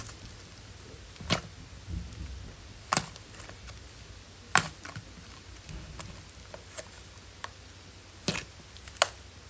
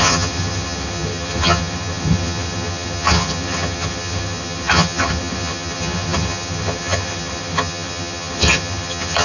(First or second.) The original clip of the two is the first